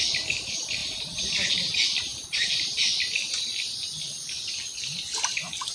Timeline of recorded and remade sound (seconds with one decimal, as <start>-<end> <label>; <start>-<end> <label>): 0.0-5.7 recorded